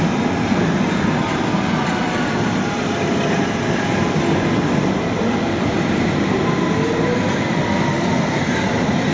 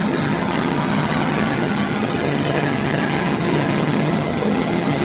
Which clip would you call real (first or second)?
first